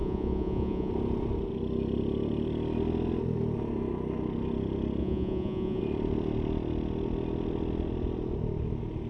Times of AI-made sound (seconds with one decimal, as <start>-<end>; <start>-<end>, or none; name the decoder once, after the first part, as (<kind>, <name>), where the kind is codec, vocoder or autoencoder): 0.0-0.9 (vocoder, Vocos); 5.0-5.8